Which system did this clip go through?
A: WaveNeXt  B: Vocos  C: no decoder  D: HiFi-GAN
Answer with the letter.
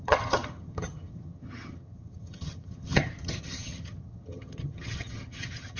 D